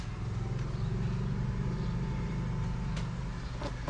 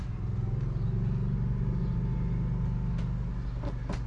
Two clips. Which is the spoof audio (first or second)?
first